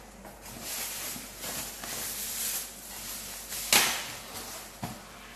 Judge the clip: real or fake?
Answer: real